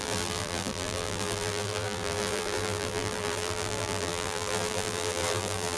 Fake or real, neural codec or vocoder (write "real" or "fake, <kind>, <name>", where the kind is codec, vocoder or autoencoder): fake, vocoder, BigVGAN v2